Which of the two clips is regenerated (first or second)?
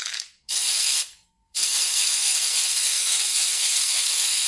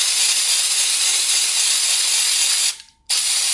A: first